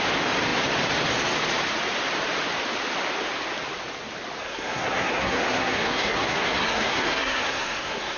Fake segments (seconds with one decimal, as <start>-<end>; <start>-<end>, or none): 4.4-8.2